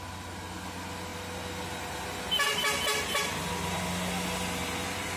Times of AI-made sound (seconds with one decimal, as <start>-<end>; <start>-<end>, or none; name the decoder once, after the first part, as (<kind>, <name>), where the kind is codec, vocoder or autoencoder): none